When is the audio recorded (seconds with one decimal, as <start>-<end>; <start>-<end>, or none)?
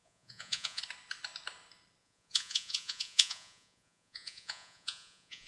0.8-2.0